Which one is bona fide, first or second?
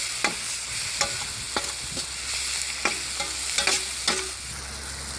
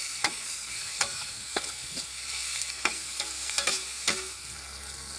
first